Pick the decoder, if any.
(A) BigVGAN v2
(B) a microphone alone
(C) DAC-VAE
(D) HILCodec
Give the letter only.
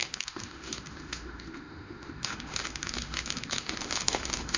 C